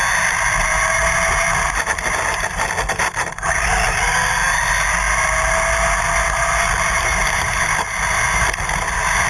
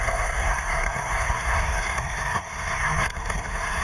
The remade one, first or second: second